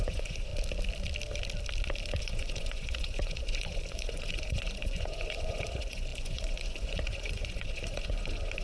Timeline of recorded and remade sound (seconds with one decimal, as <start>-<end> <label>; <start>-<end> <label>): 0.0-0.5 remade; 0.5-2.2 recorded; 2.2-8.6 remade